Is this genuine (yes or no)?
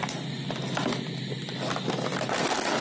yes